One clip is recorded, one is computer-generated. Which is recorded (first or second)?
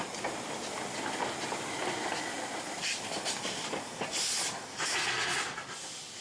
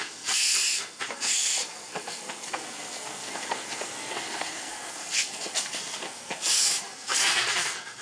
first